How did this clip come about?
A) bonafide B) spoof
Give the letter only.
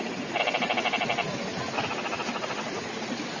A